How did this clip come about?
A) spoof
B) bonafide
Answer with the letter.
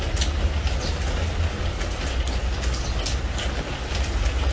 B